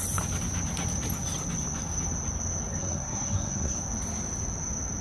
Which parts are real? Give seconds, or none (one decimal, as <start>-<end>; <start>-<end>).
0.0-2.8; 3.8-5.0